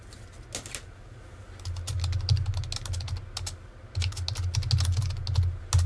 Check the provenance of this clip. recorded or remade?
recorded